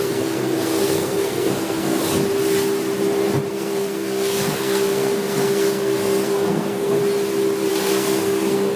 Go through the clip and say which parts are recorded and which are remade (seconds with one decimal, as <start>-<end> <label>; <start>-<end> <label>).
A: 0.0-2.0 remade; 2.0-3.5 recorded; 3.5-7.0 remade; 7.0-7.7 recorded; 7.7-8.8 remade